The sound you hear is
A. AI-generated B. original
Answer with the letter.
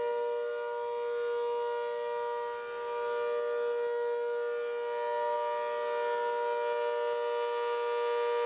B